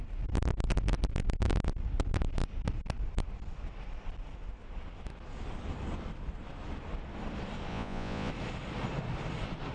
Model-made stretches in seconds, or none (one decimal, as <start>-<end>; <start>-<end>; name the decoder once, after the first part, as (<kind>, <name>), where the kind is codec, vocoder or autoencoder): 7.7-8.3 (vocoder, Vocos)